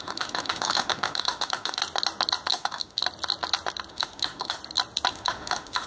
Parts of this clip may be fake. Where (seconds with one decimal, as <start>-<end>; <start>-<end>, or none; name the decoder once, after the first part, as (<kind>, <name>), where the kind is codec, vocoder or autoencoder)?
0.0-1.8 (autoencoder, DAC-VAE); 2.5-3.0; 3.9-4.6; 5.1-5.9